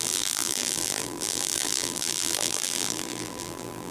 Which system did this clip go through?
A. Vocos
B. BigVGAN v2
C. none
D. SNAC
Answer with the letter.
B